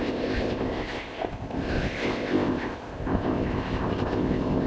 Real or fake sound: fake